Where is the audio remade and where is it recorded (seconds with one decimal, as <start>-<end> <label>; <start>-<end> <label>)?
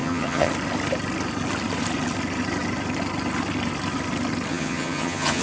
0.0-0.5 remade; 0.5-4.5 recorded; 4.5-5.4 remade